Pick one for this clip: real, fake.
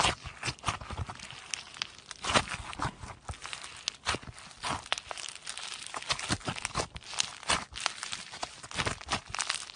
real